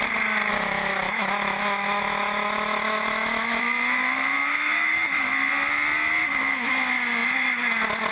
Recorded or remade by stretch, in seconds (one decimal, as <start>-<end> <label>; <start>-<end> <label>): 0.0-0.5 recorded; 0.5-3.6 remade; 3.6-4.0 recorded; 4.0-5.5 remade; 5.5-6.2 recorded; 6.2-6.7 remade; 6.7-8.1 recorded